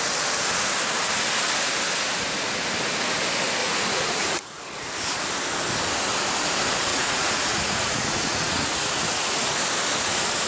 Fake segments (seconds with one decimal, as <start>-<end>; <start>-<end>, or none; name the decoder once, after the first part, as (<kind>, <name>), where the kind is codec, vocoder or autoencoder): 3.6-4.6 (vocoder, Vocos); 6.9-9.6